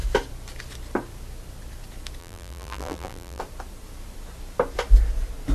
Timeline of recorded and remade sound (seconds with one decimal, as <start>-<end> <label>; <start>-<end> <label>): 0.0-2.2 recorded; 2.2-3.4 remade; 3.4-5.5 recorded